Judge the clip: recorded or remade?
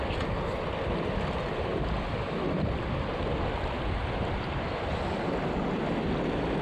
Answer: recorded